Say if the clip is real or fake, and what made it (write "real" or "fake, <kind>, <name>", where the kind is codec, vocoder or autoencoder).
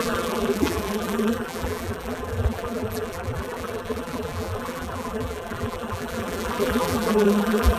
fake, vocoder, BigVGAN v2